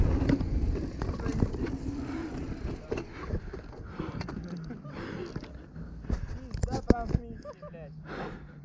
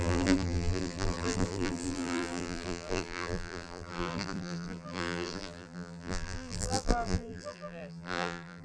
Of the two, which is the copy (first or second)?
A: second